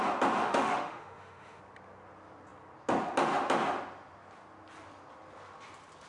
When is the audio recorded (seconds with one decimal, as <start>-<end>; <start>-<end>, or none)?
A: 0.0-0.4; 1.6-6.1